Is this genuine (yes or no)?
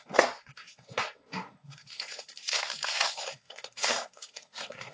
no